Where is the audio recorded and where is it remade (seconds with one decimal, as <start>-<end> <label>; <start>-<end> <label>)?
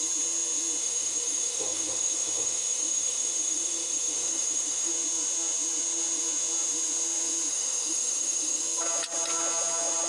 0.0-0.8 recorded; 0.8-4.9 remade; 4.9-7.5 recorded; 7.5-8.6 remade; 8.6-10.1 recorded